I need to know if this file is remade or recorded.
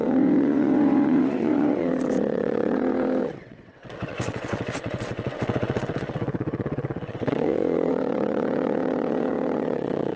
remade